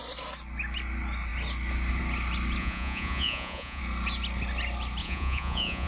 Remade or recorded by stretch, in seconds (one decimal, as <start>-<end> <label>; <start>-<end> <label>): 0.0-2.6 recorded; 2.6-3.8 remade; 3.8-5.0 recorded; 5.0-5.9 remade